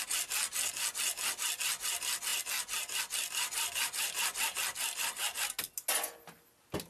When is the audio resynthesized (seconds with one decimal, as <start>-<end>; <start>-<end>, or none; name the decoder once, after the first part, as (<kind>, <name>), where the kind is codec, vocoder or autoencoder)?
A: none